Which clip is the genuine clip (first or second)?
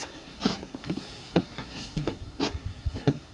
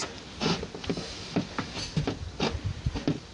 second